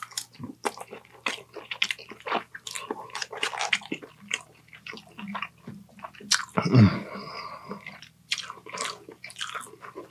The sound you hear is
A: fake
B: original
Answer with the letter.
B